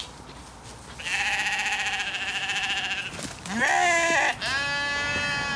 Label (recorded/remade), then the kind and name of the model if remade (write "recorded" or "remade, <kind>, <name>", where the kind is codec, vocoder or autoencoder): recorded